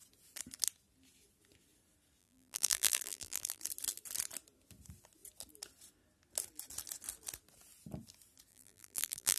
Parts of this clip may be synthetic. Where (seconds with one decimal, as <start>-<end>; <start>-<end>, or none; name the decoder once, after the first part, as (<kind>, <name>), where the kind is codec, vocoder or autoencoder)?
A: 2.2-3.6 (vocoder, BigVGAN v2); 8.5-9.4